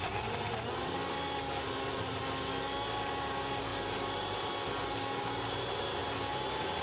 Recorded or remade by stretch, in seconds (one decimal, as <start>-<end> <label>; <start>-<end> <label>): 0.0-6.8 recorded